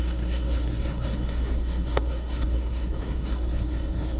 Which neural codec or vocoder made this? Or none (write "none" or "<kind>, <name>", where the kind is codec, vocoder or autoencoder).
codec, SNAC